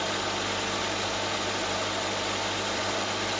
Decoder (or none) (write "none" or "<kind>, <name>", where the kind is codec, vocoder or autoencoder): none